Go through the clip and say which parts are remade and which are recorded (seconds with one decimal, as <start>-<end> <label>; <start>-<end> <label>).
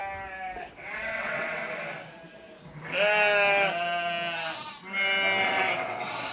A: 0.0-0.6 recorded; 0.6-1.6 remade; 1.6-5.4 recorded; 5.4-6.3 remade